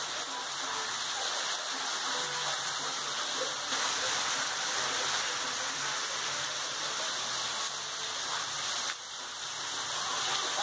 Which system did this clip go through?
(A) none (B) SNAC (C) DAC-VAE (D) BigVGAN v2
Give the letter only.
A